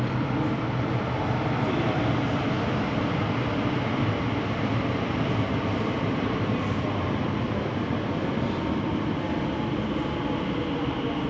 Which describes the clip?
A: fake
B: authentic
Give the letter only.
B